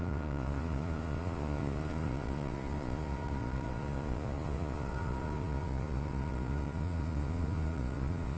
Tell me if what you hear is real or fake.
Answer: fake